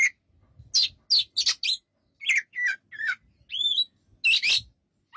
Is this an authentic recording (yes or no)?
yes